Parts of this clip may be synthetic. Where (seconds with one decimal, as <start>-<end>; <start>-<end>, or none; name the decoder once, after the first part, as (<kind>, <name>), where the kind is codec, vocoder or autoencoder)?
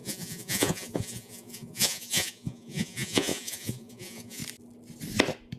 0.0-4.4 (vocoder, Vocos)